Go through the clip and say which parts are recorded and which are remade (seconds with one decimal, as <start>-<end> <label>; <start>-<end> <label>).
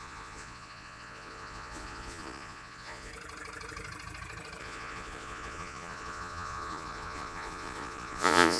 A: 0.0-3.1 remade; 3.1-4.6 recorded; 4.6-8.6 remade